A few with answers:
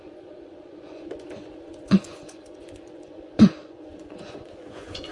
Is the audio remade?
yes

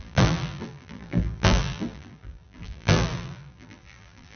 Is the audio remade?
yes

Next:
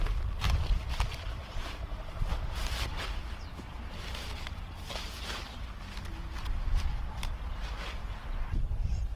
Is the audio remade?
no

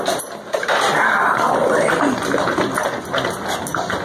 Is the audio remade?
no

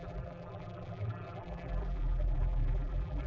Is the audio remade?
yes